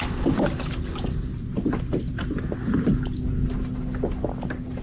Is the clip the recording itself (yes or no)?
yes